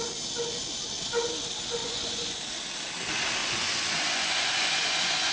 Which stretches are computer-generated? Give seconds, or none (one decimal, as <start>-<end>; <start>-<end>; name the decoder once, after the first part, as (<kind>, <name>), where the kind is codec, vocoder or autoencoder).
1.8-2.4 (vocoder, Vocos); 3.4-5.3